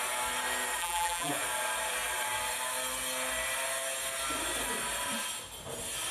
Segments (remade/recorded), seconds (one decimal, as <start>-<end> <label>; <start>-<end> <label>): 0.0-0.8 recorded; 0.8-1.3 remade; 1.3-6.1 recorded